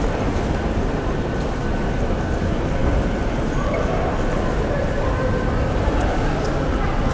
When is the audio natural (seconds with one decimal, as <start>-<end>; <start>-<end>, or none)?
0.0-7.1